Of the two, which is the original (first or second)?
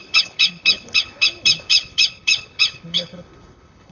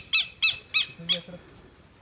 second